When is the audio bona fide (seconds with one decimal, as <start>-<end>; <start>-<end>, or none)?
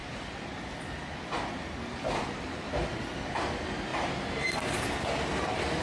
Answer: 0.0-5.8